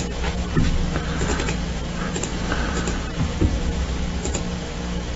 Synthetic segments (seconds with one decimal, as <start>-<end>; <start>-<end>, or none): 1.3-4.4